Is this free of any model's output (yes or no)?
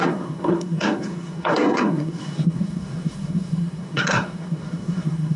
no